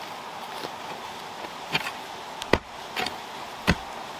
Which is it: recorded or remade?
recorded